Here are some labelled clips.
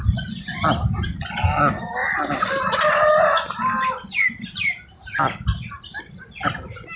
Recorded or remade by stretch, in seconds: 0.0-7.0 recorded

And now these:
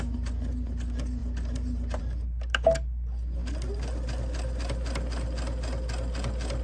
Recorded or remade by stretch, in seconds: 0.0-6.6 recorded

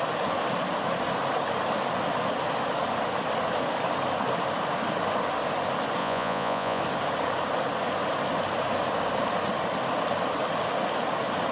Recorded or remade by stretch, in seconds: 0.0-6.0 recorded; 6.0-6.8 remade; 6.8-11.5 recorded

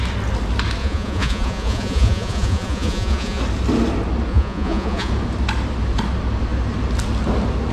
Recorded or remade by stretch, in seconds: 0.0-0.8 recorded; 0.8-3.4 remade; 3.4-4.3 recorded; 4.3-5.1 remade; 5.1-7.7 recorded

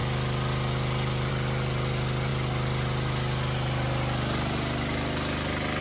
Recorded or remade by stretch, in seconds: 0.0-5.8 recorded

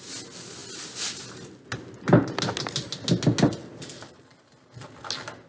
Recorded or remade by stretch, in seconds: 0.0-5.5 recorded

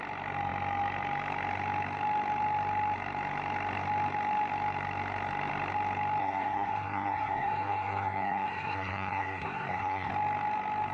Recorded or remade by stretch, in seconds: 0.0-6.2 recorded; 6.2-10.1 remade; 10.1-10.9 recorded